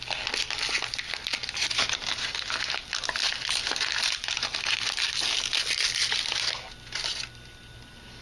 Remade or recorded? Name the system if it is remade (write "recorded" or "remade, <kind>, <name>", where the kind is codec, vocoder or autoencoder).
recorded